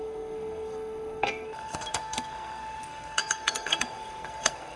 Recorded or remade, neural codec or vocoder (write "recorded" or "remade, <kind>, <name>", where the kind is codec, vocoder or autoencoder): remade, codec, SNAC